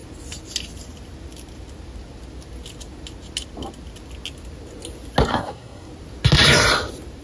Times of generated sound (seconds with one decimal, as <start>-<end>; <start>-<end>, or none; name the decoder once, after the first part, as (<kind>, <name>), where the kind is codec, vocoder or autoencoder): 5.3-5.9 (codec, SNAC)